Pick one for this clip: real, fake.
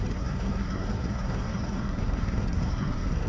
fake